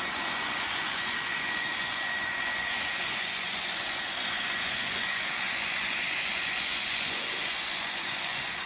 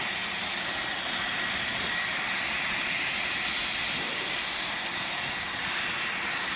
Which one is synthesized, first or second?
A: first